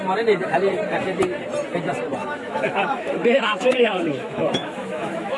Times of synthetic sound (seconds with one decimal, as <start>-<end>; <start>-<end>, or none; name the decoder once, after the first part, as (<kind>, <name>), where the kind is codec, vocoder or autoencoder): 2.2-5.4 (autoencoder, DAC-VAE)